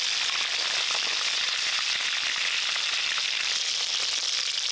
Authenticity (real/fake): real